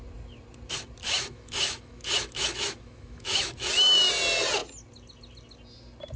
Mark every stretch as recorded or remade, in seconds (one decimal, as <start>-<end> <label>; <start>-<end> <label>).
0.0-1.0 recorded; 1.0-4.1 remade; 4.1-6.2 recorded